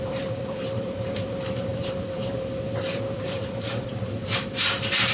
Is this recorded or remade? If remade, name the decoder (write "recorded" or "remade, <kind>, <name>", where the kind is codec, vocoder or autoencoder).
remade, vocoder, BigVGAN v2